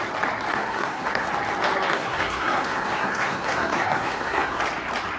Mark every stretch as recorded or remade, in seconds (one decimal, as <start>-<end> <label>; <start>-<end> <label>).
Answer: 0.0-0.5 recorded; 0.5-1.3 remade; 1.3-1.9 recorded; 1.9-4.6 remade; 4.6-5.2 recorded